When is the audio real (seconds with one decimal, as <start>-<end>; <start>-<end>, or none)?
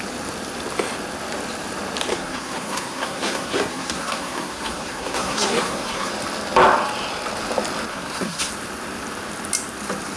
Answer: 0.0-2.1; 6.1-7.9; 8.5-10.2